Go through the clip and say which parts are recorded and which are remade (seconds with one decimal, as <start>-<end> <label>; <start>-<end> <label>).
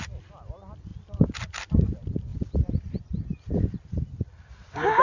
0.0-5.0 recorded